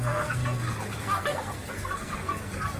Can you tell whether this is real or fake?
fake